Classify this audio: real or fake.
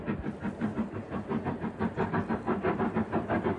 real